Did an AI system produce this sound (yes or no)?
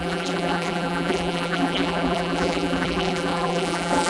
yes